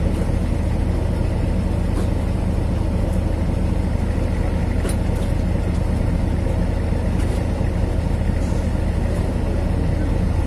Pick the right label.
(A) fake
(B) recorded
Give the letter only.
B